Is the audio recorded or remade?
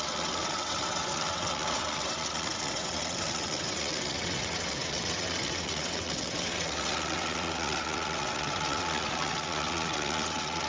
remade